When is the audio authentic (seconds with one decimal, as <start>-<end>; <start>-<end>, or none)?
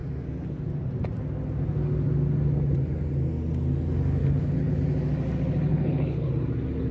0.0-4.2; 4.8-5.7; 6.3-6.9